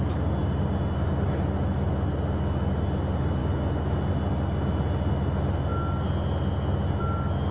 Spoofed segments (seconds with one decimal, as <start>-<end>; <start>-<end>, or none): none